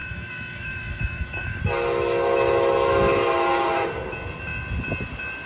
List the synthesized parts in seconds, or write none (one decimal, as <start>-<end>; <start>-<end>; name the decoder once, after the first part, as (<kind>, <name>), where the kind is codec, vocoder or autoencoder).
0.0-1.6 (autoencoder, DAC-VAE)

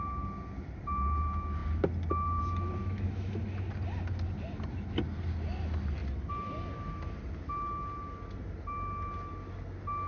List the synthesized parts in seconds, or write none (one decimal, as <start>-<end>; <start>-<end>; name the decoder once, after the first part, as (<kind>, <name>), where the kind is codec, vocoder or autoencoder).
2.8-3.4 (autoencoder, DAC-VAE)

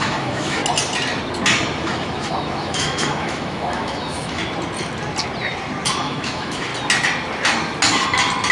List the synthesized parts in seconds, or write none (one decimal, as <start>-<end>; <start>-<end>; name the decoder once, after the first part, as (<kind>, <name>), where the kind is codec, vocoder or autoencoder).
0.0-0.6 (autoencoder, DAC-VAE); 1.8-4.4; 6.0-6.7